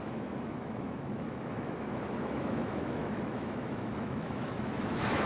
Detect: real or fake fake